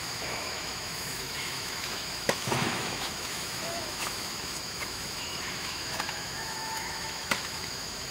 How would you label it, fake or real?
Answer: fake